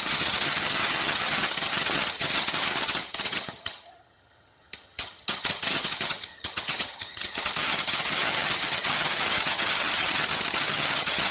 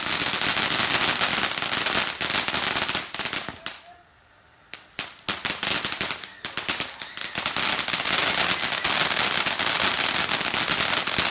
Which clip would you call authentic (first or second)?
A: second